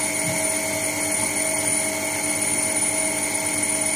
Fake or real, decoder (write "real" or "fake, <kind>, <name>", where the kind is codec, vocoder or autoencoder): real